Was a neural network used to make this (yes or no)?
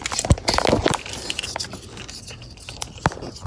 no